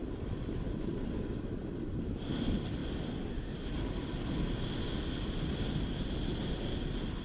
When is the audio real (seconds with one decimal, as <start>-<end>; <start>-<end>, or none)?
0.9-1.9; 2.8-5.7